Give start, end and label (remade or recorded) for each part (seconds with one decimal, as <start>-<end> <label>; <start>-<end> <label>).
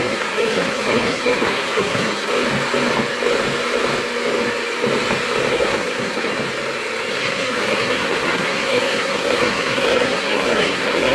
0.0-2.3 remade; 2.3-5.5 recorded; 5.5-6.3 remade; 6.3-7.1 recorded; 7.1-11.1 remade